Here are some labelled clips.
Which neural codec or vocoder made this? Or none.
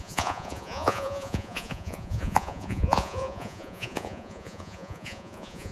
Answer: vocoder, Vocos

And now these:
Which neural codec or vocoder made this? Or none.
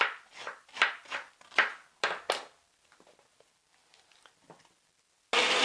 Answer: none